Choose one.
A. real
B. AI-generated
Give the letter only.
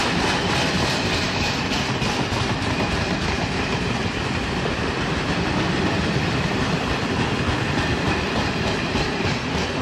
B